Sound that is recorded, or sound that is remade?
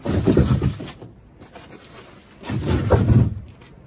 recorded